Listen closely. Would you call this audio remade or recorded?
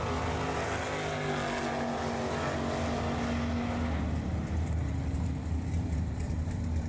recorded